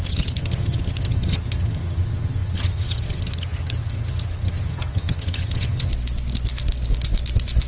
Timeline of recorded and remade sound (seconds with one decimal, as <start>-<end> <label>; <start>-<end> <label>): 0.0-5.9 remade; 5.9-7.7 recorded